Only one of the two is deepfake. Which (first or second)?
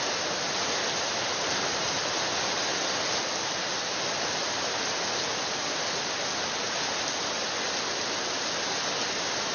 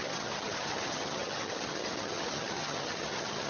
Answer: second